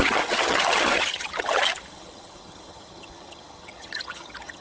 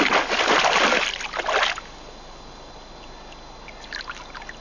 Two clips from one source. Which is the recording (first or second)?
second